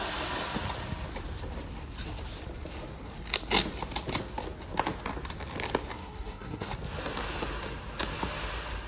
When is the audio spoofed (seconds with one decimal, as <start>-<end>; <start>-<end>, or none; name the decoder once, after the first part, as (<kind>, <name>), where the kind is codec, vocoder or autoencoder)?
5.9-6.7 (codec, SNAC)